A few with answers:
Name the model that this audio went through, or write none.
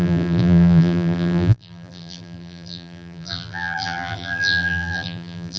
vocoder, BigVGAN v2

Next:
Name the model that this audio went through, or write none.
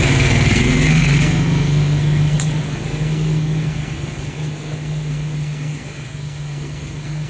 codec, SNAC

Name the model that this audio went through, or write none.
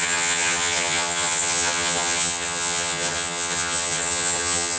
vocoder, HiFi-GAN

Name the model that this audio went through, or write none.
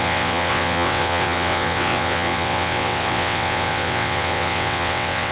vocoder, WaveNeXt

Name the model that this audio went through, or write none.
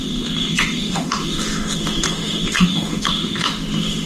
autoencoder, DAC-VAE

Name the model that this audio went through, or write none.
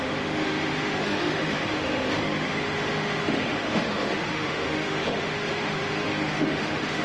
autoencoder, DAC-VAE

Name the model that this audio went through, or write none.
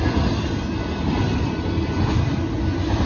none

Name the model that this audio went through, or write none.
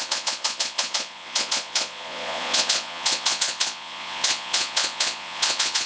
vocoder, Vocos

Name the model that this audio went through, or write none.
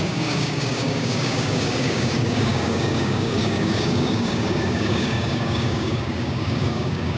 codec, DAC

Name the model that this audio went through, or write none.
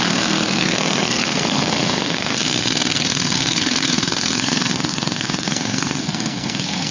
codec, SNAC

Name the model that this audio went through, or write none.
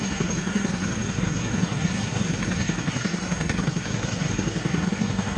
codec, SNAC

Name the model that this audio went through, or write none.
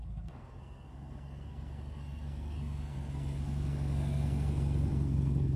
codec, SNAC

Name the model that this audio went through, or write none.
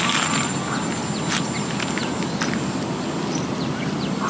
none